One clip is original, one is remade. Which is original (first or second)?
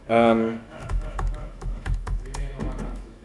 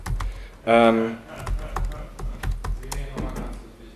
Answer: second